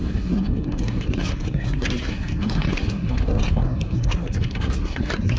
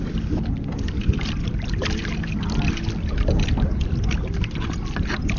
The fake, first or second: first